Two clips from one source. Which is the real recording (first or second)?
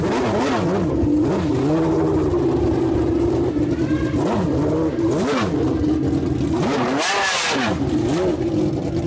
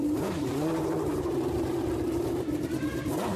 first